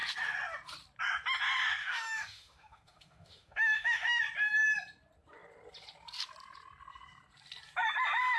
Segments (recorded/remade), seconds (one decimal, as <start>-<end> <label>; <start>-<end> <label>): 0.0-1.8 recorded; 1.8-4.2 remade; 4.2-8.4 recorded